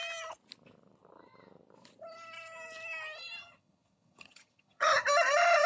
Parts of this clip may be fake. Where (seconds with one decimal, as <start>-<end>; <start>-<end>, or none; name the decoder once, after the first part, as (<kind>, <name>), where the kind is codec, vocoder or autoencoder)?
3.4-4.9 (vocoder, HiFi-GAN)